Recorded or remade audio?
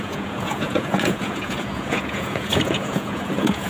remade